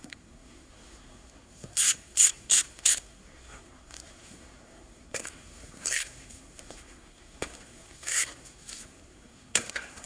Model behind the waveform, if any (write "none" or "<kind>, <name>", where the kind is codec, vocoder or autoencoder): codec, SNAC